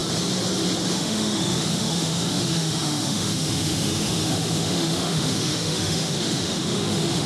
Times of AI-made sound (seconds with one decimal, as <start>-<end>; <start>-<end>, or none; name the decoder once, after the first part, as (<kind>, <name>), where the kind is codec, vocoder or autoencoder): 0.9-7.3 (autoencoder, DAC-VAE)

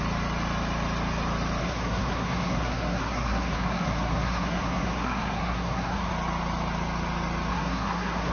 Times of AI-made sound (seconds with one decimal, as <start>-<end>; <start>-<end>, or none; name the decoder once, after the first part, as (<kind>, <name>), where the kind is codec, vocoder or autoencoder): 1.6-6.1 (codec, SNAC); 7.5-8.3